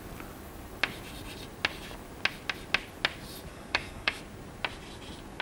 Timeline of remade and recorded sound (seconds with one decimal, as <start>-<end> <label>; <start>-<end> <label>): 0.0-3.5 recorded; 3.5-4.2 remade; 4.2-5.4 recorded